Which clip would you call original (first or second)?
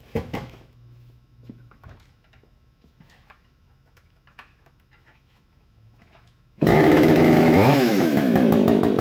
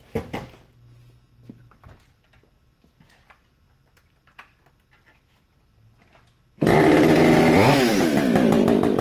second